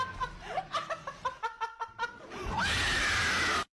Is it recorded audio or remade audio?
recorded